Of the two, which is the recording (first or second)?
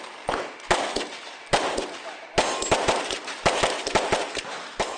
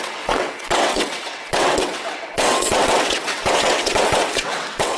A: first